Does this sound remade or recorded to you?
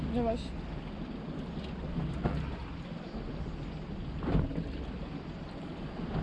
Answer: recorded